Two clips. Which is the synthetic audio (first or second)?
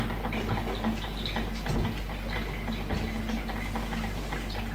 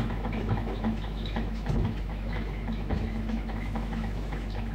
second